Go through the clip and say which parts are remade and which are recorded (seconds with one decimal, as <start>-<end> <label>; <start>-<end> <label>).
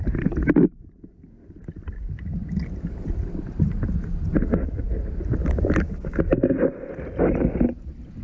0.0-8.2 recorded